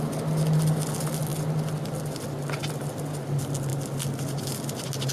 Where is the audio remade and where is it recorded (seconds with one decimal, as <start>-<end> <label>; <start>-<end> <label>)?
0.0-5.1 recorded